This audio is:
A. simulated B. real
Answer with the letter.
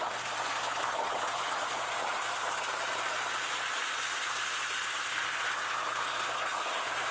B